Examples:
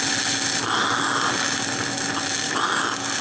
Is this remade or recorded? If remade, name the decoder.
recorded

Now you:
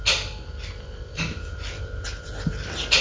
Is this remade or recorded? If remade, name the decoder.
recorded